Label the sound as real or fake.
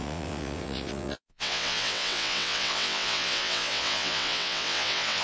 fake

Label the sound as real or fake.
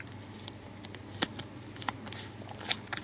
real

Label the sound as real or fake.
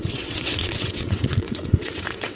fake